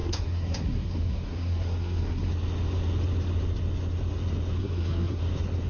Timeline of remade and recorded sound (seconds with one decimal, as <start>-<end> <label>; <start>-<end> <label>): 0.0-2.3 remade; 2.3-4.6 recorded; 4.6-5.2 remade; 5.2-5.7 recorded